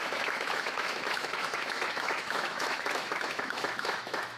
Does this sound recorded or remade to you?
remade